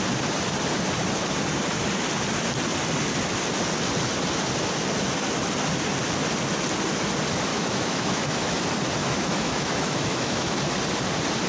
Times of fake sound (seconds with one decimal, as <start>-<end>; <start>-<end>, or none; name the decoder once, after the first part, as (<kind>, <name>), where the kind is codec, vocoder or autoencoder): 7.5-8.6 (autoencoder, DAC-VAE); 9.0-10.6